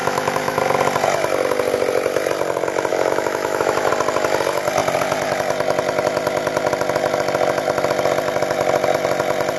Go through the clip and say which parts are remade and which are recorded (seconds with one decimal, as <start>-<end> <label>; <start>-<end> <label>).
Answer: 0.0-0.6 remade; 0.6-2.9 recorded; 2.9-3.9 remade; 3.9-9.6 recorded